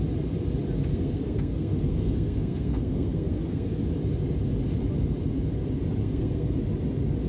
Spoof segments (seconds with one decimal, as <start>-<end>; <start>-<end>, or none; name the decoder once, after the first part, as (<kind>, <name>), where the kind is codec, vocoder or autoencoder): 0.9-3.8 (codec, SNAC); 6.0-6.6